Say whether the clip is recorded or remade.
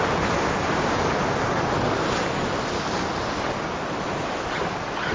recorded